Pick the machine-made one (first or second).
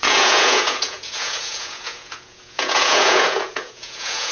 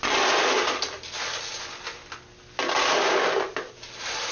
first